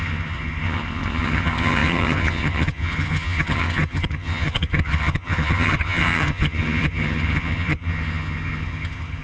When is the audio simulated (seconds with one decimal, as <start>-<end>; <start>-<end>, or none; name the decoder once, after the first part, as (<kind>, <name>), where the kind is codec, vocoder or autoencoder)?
0.0-9.2 (vocoder, HiFi-GAN)